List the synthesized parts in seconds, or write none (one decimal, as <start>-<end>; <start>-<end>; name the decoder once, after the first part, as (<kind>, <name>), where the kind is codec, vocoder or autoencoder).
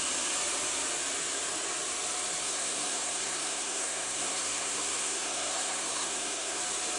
2.4-6.6 (codec, SNAC)